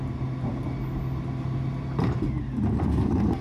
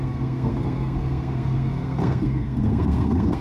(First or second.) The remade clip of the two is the second